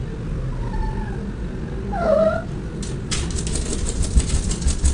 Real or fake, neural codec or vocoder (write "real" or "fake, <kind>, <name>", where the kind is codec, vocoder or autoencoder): real